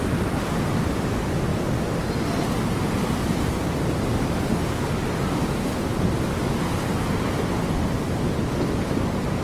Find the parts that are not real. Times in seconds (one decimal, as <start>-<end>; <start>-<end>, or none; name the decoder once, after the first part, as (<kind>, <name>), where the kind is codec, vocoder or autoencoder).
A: none